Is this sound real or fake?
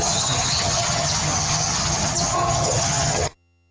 fake